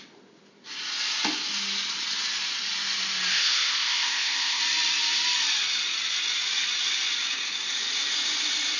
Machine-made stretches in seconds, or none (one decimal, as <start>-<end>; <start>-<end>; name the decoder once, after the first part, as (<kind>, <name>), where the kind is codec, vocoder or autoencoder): 3.3-4.6 (codec, ZipCodec)